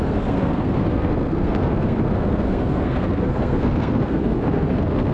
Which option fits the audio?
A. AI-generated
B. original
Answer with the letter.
A